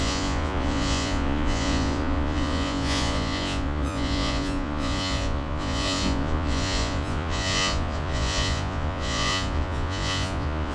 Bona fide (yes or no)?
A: no